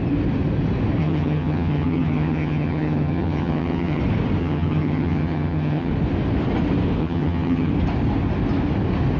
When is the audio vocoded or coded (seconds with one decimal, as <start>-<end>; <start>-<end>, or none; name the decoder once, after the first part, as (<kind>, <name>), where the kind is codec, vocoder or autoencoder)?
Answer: 1.0-4.0 (vocoder, HiFi-GAN); 4.4-5.9; 7.0-7.7